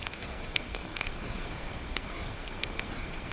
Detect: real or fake fake